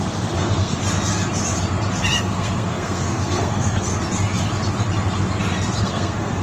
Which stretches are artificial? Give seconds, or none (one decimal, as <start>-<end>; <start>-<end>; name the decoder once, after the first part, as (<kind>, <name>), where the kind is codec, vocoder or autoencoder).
0.0-0.8 (codec, SNAC); 2.2-3.9; 5.8-6.4